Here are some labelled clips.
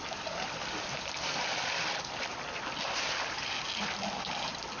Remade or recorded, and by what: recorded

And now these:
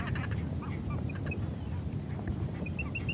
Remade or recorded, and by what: recorded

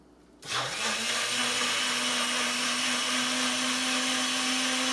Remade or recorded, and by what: recorded